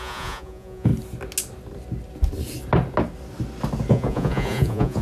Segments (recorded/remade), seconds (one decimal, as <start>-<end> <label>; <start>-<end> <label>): 0.0-0.9 remade; 0.9-3.9 recorded; 3.9-5.0 remade